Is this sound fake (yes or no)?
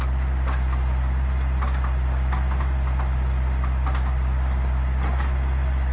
no